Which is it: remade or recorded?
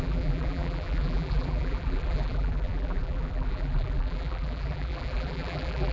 remade